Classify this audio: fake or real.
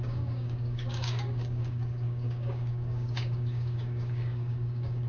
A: fake